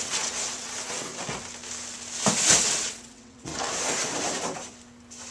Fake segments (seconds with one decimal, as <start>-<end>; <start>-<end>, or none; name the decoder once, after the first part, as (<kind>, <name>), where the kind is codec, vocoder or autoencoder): 0.0-1.1 (vocoder, WaveNeXt); 2.6-3.5